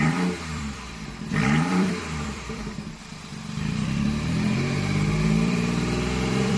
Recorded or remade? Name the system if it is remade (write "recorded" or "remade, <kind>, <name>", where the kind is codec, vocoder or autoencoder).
remade, vocoder, BigVGAN v2